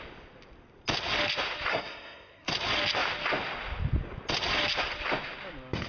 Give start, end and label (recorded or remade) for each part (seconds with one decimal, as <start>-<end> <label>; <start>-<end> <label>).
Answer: 0.0-1.7 recorded; 1.7-2.5 remade; 2.5-5.9 recorded